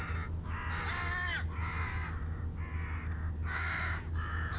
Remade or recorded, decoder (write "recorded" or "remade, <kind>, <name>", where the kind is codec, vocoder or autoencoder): recorded